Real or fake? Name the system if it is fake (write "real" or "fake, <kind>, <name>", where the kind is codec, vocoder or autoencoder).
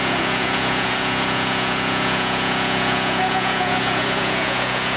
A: fake, vocoder, Vocos